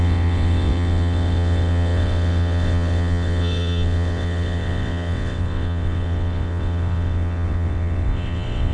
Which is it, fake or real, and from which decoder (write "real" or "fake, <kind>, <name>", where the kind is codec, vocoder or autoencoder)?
fake, vocoder, WaveNeXt